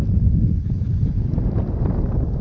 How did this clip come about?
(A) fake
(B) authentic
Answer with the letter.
B